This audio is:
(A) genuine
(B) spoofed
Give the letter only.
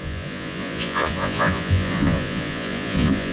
B